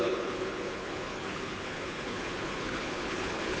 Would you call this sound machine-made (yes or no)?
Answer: yes